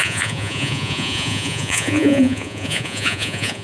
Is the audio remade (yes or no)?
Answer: yes